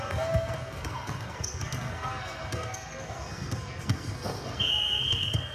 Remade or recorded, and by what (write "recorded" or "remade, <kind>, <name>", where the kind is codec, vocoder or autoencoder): remade, codec, SNAC